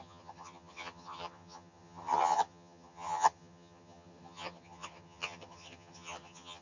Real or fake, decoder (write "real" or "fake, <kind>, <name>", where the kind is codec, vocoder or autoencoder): fake, vocoder, HiFi-GAN